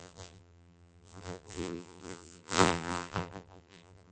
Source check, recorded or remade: remade